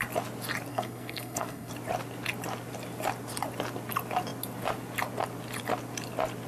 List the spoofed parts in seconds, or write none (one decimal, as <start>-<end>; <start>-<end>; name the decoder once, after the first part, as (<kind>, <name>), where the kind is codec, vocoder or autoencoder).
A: 0.7-1.7 (codec, SNAC)